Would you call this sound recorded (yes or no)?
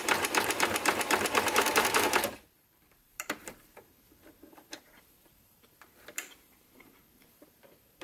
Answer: no